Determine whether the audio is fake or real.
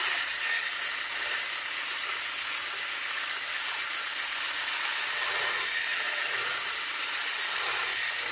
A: real